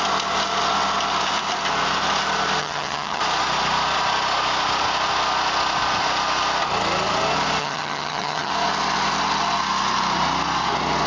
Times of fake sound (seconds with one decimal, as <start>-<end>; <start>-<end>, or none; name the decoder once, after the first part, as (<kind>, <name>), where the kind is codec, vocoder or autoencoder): 2.6-3.2 (vocoder, HiFi-GAN); 7.6-8.5